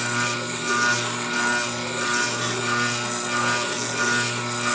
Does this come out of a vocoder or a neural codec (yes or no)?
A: no